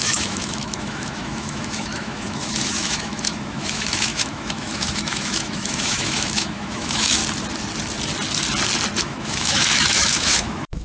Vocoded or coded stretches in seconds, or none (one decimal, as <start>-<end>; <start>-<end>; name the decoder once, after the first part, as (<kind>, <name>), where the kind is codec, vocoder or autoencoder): 0.0-7.2 (autoencoder, DAC-VAE); 9.0-10.8